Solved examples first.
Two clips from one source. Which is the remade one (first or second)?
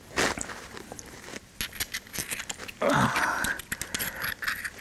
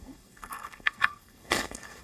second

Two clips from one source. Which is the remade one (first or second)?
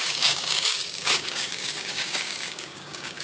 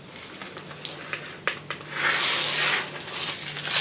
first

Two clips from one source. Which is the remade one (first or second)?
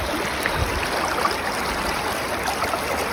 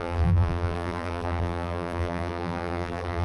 second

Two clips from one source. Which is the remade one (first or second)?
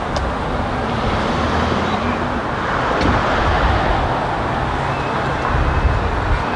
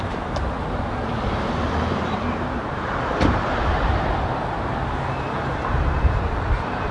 second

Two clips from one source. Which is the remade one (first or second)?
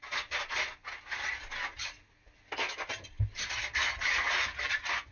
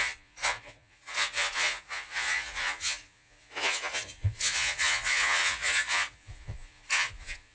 second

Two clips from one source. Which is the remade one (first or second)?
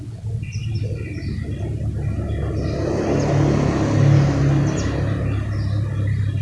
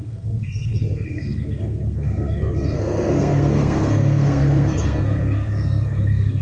second